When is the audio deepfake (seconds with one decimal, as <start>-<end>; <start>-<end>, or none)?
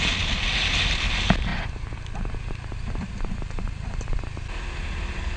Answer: none